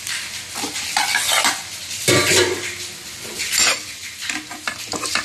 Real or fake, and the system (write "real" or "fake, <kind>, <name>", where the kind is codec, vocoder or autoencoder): real